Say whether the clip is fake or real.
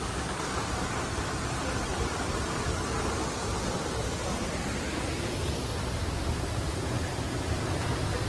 real